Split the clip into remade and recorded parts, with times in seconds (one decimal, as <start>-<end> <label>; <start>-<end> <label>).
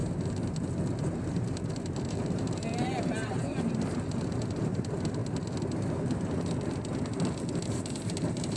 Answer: 0.0-1.3 recorded; 1.3-5.2 remade; 5.2-7.6 recorded; 7.6-8.6 remade